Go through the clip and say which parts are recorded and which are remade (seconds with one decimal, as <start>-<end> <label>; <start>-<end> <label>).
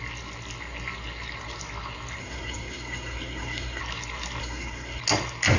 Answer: 0.0-2.2 recorded; 2.2-3.8 remade; 3.8-4.4 recorded; 4.4-5.0 remade; 5.0-5.6 recorded